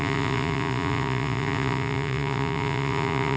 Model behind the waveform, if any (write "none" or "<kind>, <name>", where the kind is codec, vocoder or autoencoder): vocoder, Vocos